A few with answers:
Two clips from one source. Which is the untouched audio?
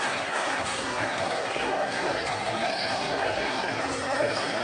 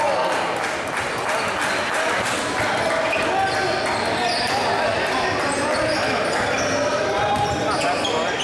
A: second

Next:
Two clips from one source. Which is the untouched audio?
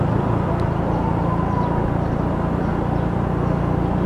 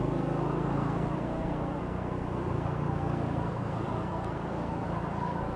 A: first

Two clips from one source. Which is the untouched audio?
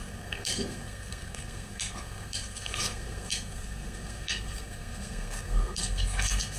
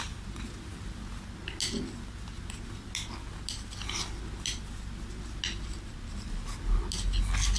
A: second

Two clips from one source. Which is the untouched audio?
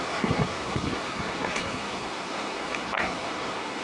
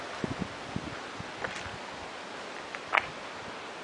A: second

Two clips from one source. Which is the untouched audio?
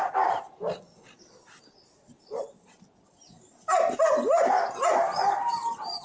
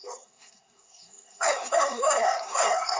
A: first